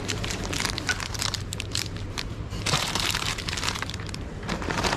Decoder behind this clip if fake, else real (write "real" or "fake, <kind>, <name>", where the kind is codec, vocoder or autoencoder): fake, vocoder, BigVGAN v2